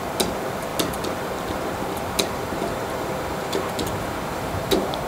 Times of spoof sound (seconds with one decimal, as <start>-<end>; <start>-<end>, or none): none